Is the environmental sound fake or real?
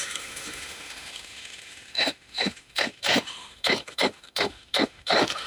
fake